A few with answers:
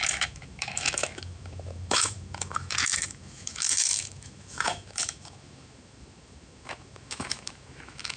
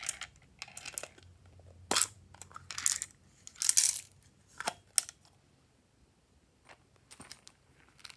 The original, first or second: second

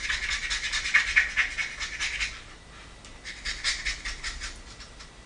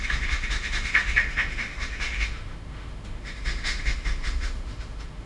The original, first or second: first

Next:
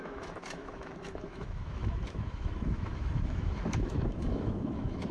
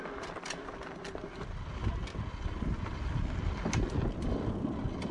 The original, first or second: second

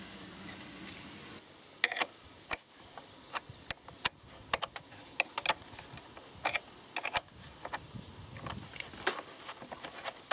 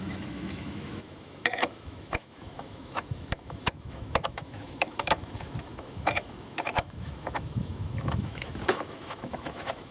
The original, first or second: first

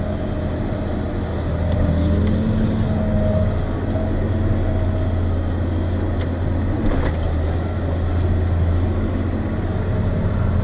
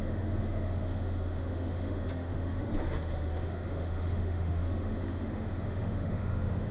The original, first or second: first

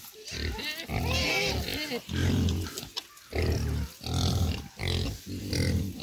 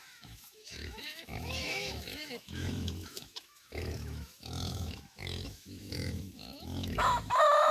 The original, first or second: first